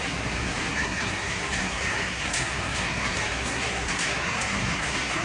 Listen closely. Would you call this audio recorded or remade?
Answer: remade